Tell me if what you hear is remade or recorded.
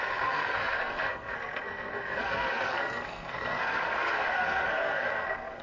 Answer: remade